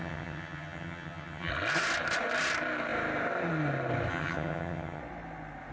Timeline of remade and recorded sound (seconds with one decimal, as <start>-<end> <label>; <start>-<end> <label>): 0.0-1.5 remade; 1.5-4.1 recorded; 4.1-5.0 remade; 5.0-5.7 recorded